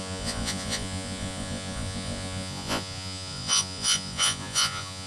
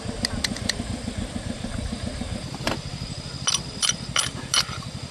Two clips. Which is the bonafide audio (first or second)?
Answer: second